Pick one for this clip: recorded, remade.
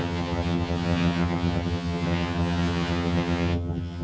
remade